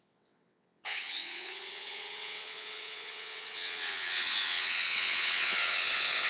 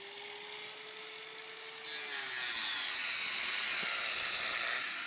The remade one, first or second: first